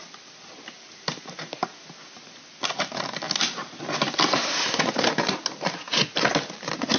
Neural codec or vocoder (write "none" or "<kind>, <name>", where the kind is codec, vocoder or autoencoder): none